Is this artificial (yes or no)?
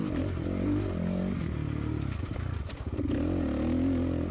no